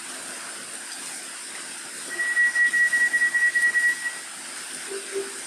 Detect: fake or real real